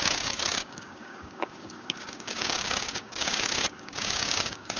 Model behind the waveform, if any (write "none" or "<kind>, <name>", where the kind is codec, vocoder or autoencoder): codec, DAC